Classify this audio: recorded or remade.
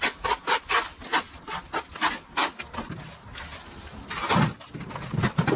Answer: recorded